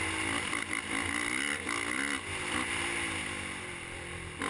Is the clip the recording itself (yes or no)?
yes